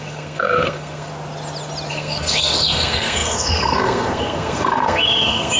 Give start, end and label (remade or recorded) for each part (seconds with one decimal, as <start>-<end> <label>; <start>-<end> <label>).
0.0-1.1 remade; 1.1-1.9 recorded; 1.9-5.6 remade